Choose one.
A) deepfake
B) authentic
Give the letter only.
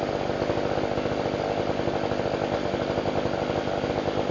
B